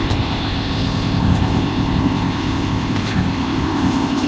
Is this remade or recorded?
remade